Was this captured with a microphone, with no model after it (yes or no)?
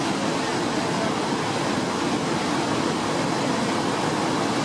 yes